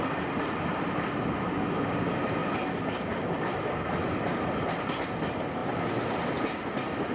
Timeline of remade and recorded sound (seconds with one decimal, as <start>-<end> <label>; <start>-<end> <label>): 0.0-7.1 recorded